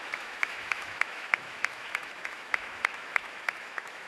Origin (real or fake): fake